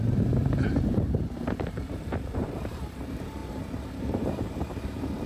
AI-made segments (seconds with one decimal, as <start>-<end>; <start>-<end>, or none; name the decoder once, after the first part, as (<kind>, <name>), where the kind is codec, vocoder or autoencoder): 0.0-5.3 (vocoder, BigVGAN v2)